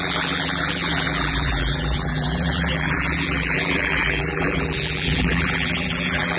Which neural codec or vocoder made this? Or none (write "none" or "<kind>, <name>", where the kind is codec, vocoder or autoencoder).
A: vocoder, BigVGAN v2